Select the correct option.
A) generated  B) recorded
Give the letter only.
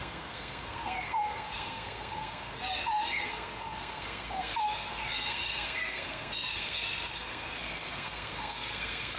A